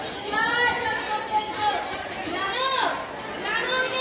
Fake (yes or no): no